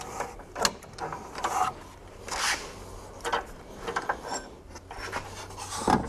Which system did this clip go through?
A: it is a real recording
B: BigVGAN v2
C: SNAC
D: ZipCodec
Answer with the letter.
A